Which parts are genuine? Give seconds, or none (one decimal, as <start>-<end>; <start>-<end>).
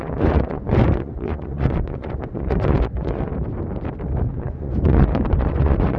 3.3-4.3